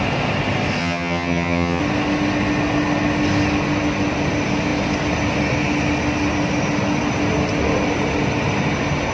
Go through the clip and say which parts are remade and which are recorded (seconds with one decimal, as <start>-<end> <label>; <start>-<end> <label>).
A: 0.0-0.8 recorded; 0.8-1.8 remade; 1.8-9.1 recorded